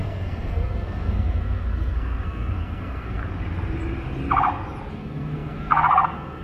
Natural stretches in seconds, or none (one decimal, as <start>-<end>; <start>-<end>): 3.2-4.9